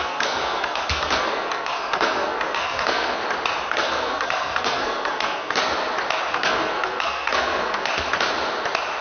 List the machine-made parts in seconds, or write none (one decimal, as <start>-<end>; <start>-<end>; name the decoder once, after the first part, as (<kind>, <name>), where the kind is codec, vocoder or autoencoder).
0.0-3.2 (codec, SNAC); 3.7-5.6; 6.3-7.9